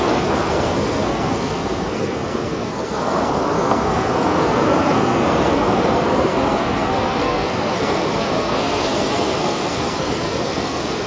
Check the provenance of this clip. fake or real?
fake